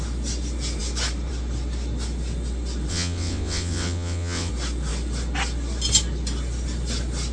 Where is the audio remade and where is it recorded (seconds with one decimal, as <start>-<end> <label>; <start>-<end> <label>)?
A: 0.0-2.9 recorded; 2.9-4.5 remade; 4.5-7.3 recorded